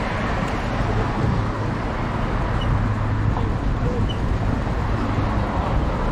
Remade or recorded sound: recorded